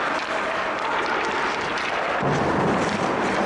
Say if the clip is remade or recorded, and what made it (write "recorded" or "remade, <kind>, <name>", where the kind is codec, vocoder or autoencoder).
recorded